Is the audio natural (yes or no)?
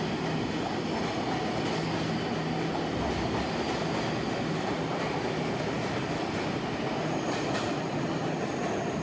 yes